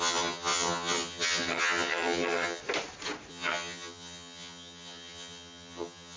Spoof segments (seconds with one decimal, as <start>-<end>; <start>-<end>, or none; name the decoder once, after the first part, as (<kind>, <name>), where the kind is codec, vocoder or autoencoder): 0.0-2.6 (vocoder, HiFi-GAN); 3.3-6.2